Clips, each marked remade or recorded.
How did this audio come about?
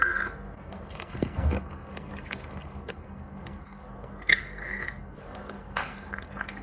remade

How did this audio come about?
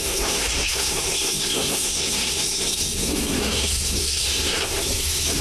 remade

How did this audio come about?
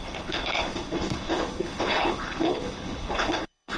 remade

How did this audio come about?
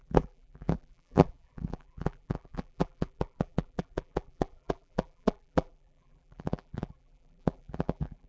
remade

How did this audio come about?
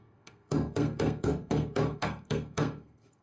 remade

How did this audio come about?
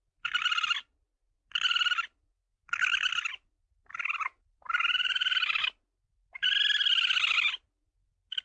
recorded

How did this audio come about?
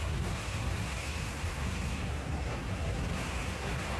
remade